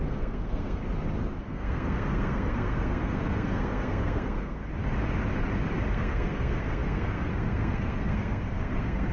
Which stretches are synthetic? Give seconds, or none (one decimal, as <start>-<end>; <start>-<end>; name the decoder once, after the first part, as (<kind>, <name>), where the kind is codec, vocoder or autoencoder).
0.0-0.8 (codec, SNAC); 1.4-4.6; 5.9-9.1